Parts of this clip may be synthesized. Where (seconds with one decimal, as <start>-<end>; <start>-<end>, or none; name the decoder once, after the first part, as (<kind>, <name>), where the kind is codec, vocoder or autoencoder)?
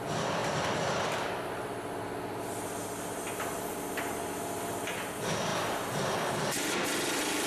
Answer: none